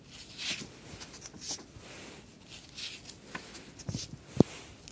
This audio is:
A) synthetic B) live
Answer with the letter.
B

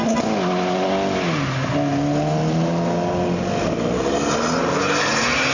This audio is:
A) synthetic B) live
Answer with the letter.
B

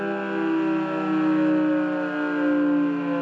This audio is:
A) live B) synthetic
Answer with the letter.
A